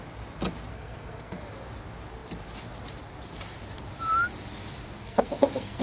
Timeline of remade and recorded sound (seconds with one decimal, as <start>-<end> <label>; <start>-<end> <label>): 0.0-0.7 recorded; 0.7-1.4 remade; 1.4-5.0 recorded; 5.0-5.8 remade